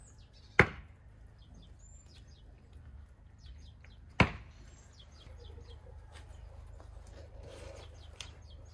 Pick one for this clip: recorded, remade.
recorded